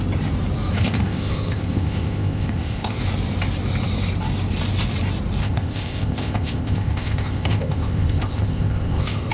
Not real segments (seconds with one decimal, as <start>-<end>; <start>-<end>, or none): 0.8-3.0; 5.4-9.3